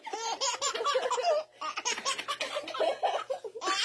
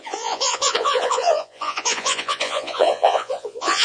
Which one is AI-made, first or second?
second